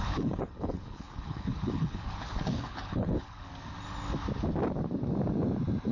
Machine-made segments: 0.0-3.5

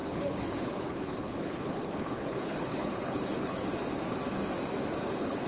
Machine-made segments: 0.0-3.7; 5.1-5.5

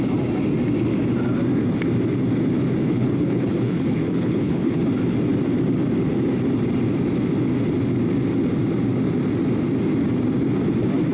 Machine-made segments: 2.8-4.8

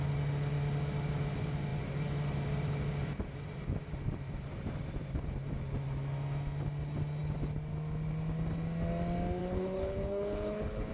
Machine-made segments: 9.4-10.9